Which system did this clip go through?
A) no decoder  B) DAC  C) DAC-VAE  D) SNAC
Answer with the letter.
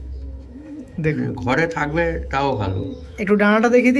C